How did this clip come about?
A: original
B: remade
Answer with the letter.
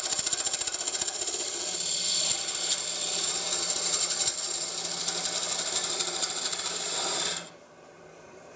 B